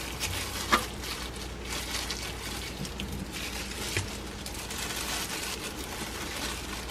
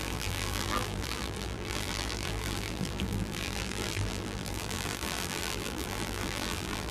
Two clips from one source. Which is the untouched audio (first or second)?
first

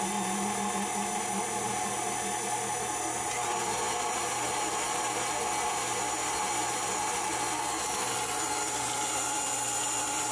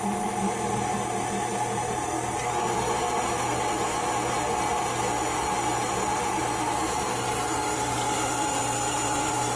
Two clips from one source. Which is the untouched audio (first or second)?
first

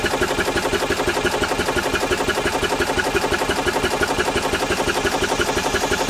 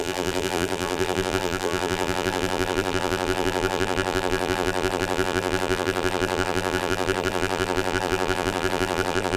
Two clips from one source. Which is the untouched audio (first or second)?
first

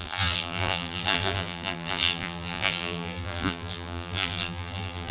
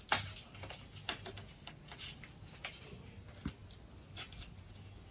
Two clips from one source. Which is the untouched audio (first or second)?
second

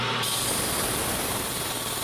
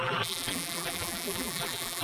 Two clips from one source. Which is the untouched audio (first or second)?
first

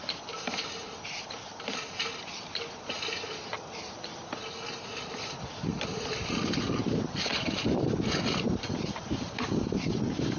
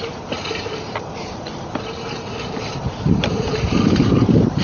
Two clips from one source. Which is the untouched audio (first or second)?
first